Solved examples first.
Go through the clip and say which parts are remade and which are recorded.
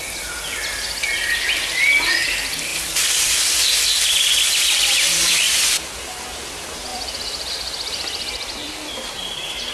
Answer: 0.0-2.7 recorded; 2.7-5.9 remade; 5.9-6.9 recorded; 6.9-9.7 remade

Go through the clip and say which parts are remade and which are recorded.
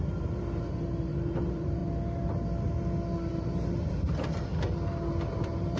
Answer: 0.0-1.8 remade; 1.8-3.3 recorded; 3.3-4.5 remade; 4.5-5.3 recorded; 5.3-5.8 remade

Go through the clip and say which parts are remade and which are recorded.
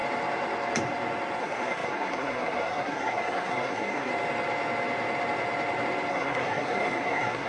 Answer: 0.0-1.4 recorded; 1.4-4.1 remade; 4.1-6.1 recorded; 6.1-7.5 remade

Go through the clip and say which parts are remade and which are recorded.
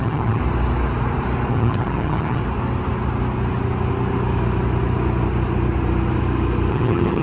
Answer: 0.0-0.4 remade; 0.4-1.5 recorded; 1.5-2.4 remade; 2.4-6.7 recorded; 6.7-7.2 remade